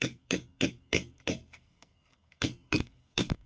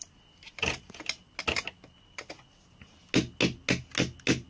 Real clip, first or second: second